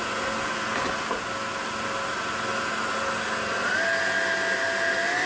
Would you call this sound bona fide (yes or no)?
yes